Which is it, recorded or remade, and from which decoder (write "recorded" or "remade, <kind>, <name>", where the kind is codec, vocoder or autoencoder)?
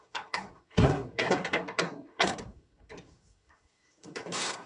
remade, codec, SNAC